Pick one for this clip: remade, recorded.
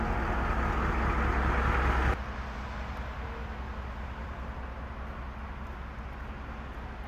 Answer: recorded